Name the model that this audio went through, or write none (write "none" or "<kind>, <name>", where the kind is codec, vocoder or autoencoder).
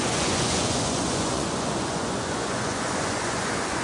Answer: vocoder, Vocos